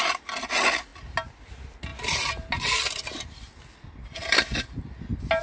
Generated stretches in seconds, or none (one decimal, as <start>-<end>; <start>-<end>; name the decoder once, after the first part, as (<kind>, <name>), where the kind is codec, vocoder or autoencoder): none